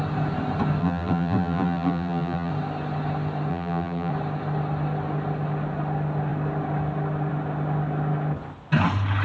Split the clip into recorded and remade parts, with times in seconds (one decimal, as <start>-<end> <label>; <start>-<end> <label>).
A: 0.0-0.8 recorded; 0.8-2.5 remade; 2.5-3.5 recorded; 3.5-4.1 remade; 4.1-9.2 recorded